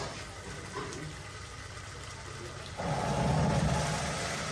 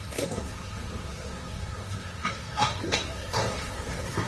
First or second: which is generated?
second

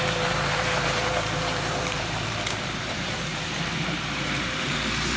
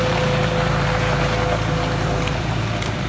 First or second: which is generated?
first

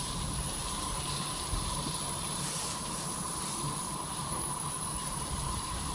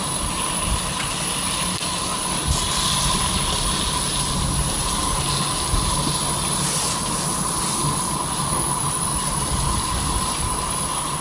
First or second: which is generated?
first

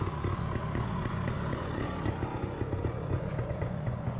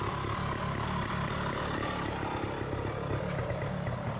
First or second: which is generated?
first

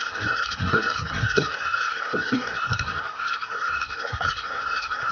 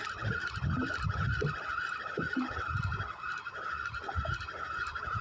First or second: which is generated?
first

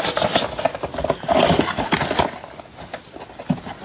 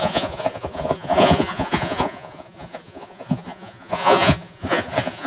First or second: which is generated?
second